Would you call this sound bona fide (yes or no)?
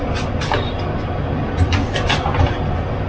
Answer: yes